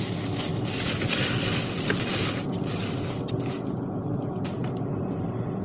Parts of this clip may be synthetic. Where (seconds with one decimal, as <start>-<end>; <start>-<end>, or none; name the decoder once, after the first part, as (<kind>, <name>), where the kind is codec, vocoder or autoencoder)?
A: none